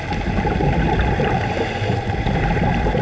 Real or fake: real